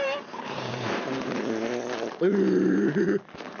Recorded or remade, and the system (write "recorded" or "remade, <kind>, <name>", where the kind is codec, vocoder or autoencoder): remade, vocoder, BigVGAN v2